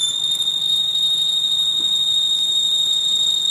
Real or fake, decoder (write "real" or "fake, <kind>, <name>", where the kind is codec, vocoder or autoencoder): real